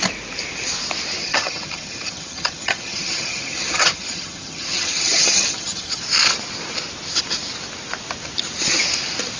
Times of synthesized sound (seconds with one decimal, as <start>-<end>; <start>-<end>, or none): 1.2-6.0